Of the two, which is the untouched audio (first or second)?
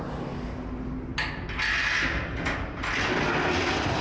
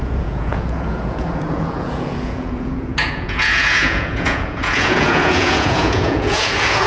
first